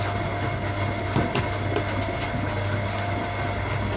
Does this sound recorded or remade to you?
recorded